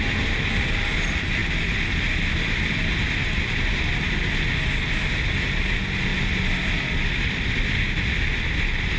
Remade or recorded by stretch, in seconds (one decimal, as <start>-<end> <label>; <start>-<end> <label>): 0.0-9.0 recorded